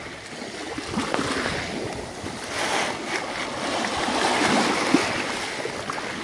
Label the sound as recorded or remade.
recorded